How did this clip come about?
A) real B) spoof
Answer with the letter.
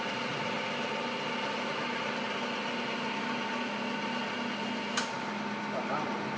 A